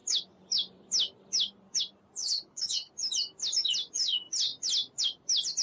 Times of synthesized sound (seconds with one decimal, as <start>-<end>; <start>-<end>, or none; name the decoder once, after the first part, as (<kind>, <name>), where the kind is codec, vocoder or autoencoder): 2.2-2.9 (codec, HILCodec)